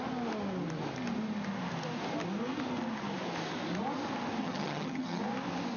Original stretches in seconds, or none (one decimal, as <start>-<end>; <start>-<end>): 0.0-4.4; 5.2-5.8